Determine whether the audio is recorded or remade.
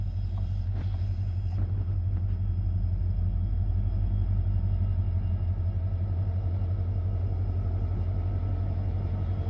recorded